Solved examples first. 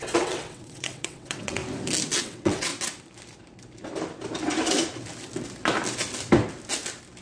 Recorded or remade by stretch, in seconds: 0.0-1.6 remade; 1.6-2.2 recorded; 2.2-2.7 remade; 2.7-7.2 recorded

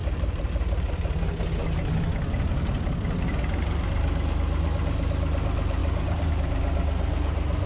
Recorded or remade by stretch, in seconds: 0.0-0.9 remade; 0.9-5.8 recorded; 5.8-6.3 remade; 6.3-7.7 recorded

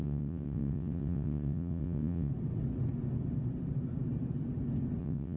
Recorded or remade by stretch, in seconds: 0.0-2.3 remade; 2.3-5.0 recorded; 5.0-5.4 remade

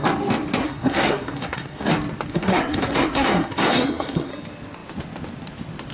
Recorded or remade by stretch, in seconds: 0.0-0.6 recorded; 0.6-1.9 remade; 1.9-2.3 recorded; 2.3-4.3 remade; 4.3-5.9 recorded

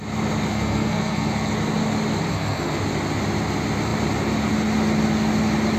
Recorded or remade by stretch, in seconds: 0.0-0.5 recorded; 0.5-1.5 remade; 1.5-2.3 recorded; 2.3-2.8 remade; 2.8-5.8 recorded